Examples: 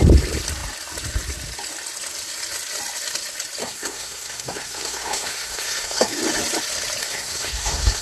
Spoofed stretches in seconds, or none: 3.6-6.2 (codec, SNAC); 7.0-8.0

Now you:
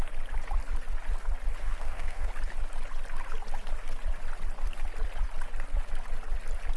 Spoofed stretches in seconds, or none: 1.6-2.3 (codec, SNAC)

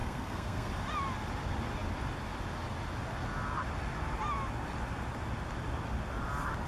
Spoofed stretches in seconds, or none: 0.0-0.7 (codec, SNAC)

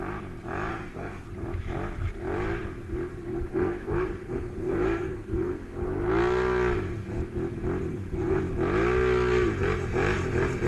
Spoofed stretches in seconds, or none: 0.7-1.3 (codec, SNAC); 3.1-6.1; 7.9-8.4

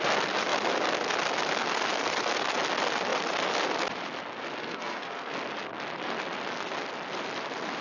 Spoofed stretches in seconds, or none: 4.6-5.3 (codec, SNAC)